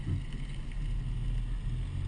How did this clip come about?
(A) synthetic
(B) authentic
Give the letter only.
B